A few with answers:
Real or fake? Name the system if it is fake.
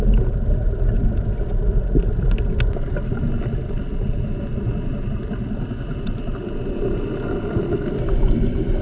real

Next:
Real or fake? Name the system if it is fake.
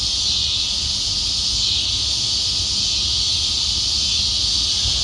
real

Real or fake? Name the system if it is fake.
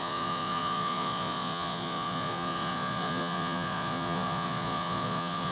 fake, vocoder, Vocos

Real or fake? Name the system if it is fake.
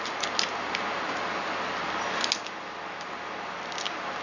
real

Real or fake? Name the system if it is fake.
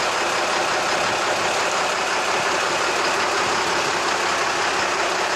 real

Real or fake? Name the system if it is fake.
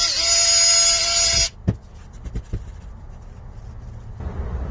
real